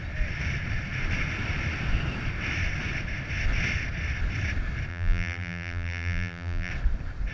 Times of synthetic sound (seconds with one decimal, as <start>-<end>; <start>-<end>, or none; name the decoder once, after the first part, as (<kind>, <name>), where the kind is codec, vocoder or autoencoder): 4.9-6.7 (vocoder, BigVGAN v2)